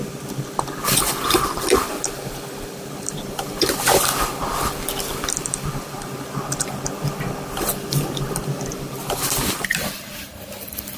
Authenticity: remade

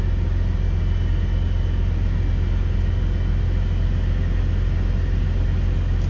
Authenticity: recorded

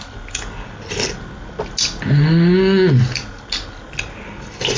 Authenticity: recorded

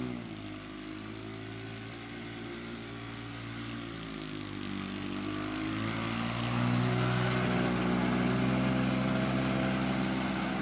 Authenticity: recorded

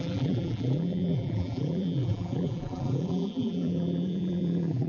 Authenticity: remade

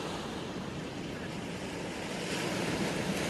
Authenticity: recorded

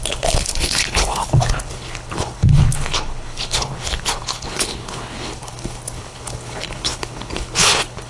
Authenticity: remade